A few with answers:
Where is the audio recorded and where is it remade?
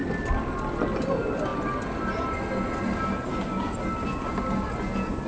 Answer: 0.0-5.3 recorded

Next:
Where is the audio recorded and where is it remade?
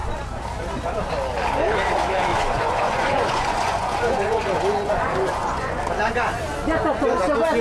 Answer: 0.0-2.3 recorded; 2.3-5.8 remade; 5.8-7.6 recorded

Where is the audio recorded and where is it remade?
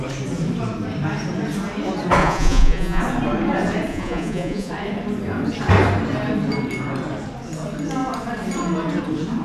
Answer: 0.0-2.2 recorded; 2.2-3.0 remade; 3.0-3.9 recorded; 3.9-4.7 remade; 4.7-9.4 recorded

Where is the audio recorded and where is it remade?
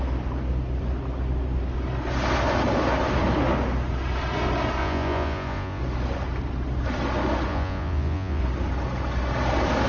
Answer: 0.0-4.8 recorded; 4.8-5.8 remade; 5.8-7.5 recorded; 7.5-8.4 remade; 8.4-9.9 recorded